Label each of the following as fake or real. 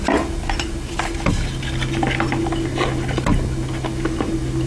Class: real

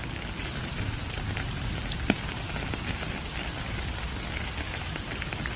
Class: real